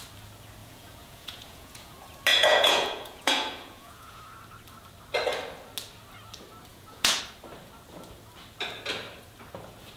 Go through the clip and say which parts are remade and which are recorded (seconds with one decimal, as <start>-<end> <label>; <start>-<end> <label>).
0.0-0.6 recorded; 0.6-1.9 remade; 1.9-2.3 recorded; 2.3-4.2 remade; 4.2-6.7 recorded; 6.7-7.2 remade; 7.2-10.0 recorded